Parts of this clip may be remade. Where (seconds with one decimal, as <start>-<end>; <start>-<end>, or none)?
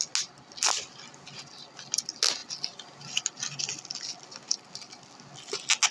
none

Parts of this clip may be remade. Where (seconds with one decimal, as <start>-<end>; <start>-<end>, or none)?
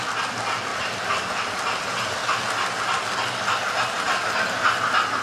none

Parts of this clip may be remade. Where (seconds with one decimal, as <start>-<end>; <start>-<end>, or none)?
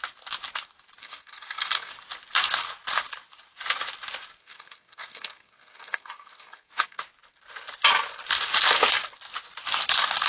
1.0-1.9; 4.4-7.0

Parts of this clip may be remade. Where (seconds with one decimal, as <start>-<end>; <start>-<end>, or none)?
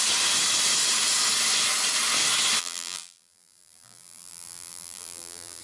2.6-5.6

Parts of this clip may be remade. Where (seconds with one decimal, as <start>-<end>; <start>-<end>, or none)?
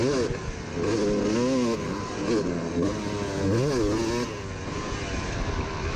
none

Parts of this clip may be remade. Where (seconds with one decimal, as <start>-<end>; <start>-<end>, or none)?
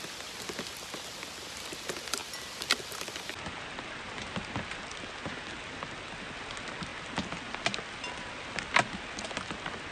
none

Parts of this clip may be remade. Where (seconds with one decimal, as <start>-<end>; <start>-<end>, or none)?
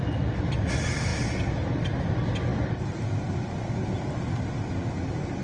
none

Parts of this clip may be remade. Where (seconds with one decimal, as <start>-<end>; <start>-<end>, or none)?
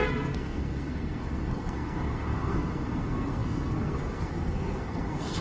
0.0-5.4